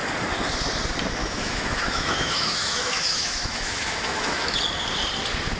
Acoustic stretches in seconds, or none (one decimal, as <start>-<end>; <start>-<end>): 0.0-1.2; 4.6-5.6